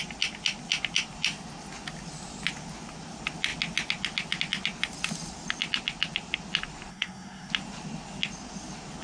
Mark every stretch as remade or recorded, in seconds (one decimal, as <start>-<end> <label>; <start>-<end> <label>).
0.0-6.9 recorded; 6.9-7.5 remade; 7.5-9.0 recorded